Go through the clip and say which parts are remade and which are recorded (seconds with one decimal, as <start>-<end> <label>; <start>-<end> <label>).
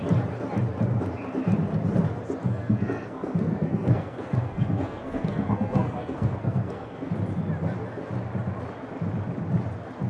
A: 0.0-2.4 recorded; 2.4-7.1 remade; 7.1-10.1 recorded